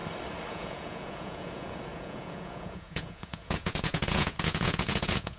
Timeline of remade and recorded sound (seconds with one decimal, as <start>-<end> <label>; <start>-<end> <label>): 0.0-0.5 recorded; 0.5-5.4 remade